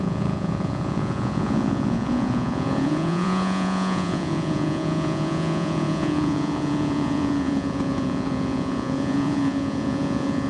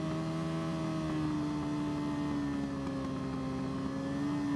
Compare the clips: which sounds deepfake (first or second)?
first